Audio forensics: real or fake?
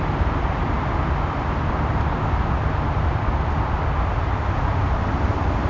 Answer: real